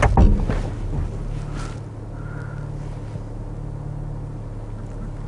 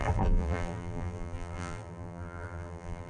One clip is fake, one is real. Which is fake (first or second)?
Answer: second